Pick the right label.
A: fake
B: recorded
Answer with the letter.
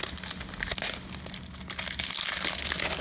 B